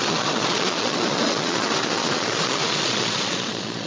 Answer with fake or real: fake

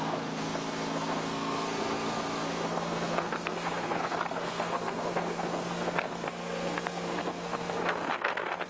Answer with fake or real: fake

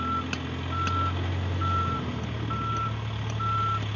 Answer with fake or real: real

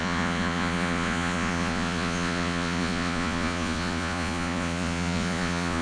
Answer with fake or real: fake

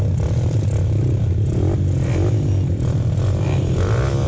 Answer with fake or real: real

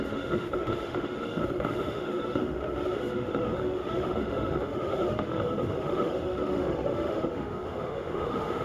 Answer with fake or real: fake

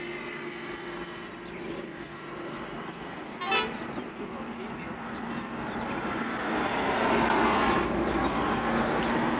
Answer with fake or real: real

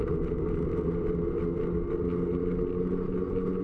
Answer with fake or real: real